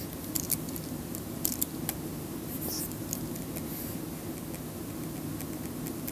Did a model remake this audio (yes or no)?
no